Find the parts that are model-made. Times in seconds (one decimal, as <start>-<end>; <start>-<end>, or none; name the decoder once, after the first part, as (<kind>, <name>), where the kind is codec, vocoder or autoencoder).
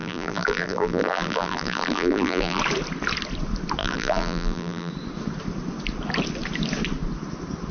0.0-2.6 (vocoder, BigVGAN v2); 3.8-4.9